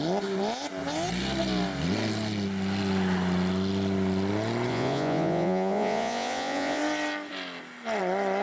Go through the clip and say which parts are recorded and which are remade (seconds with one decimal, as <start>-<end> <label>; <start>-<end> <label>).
0.0-4.7 recorded; 4.7-6.8 remade; 6.8-8.4 recorded

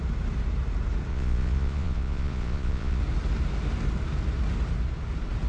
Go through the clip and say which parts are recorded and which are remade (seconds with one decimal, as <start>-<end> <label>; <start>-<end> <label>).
0.0-1.1 recorded; 1.1-3.0 remade; 3.0-5.5 recorded

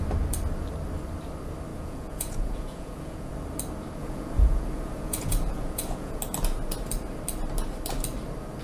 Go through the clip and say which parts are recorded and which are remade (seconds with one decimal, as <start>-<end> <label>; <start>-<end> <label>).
0.0-1.7 recorded; 1.7-3.3 remade; 3.3-4.0 recorded; 4.0-6.2 remade; 6.2-8.6 recorded

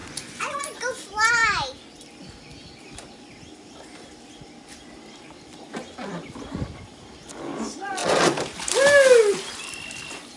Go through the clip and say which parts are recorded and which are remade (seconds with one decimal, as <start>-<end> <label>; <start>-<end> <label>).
0.0-0.6 remade; 0.6-10.4 recorded

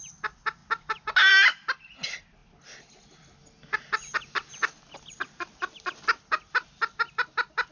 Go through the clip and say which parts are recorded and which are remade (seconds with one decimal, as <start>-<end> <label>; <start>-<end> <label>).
0.0-7.7 recorded

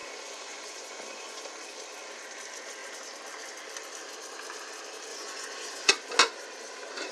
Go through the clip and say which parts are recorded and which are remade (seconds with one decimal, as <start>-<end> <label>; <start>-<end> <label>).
0.0-1.4 remade; 1.4-5.1 recorded; 5.1-5.9 remade; 5.9-7.1 recorded